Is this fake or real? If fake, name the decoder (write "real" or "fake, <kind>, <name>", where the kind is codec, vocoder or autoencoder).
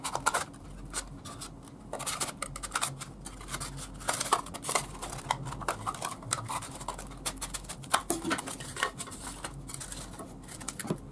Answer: real